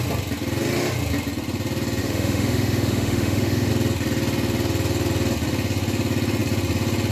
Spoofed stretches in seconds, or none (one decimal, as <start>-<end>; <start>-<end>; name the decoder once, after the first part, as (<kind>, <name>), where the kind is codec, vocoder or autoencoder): 2.0-3.7 (autoencoder, DAC-VAE)